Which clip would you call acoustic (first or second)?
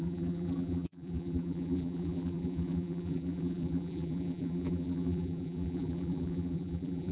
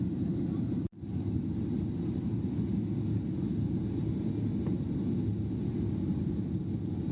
second